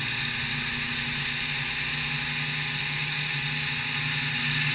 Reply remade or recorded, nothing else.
recorded